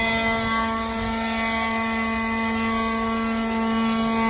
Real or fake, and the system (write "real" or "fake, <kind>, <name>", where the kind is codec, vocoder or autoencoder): real